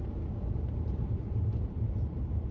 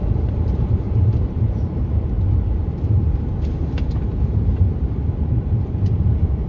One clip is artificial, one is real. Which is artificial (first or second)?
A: second